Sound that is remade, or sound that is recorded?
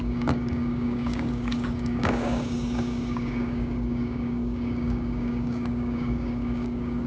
remade